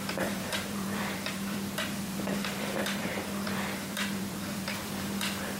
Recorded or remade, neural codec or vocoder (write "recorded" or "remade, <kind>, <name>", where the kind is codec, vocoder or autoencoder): remade, vocoder, BigVGAN v2